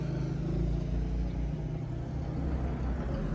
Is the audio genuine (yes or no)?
yes